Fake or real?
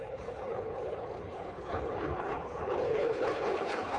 fake